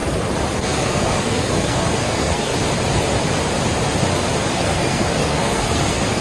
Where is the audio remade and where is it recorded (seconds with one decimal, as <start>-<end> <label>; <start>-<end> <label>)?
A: 0.0-0.6 recorded; 0.6-2.5 remade; 2.5-4.5 recorded; 4.5-6.2 remade